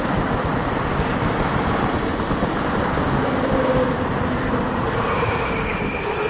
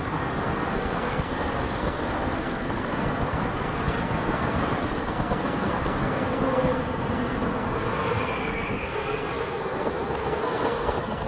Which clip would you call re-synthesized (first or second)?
second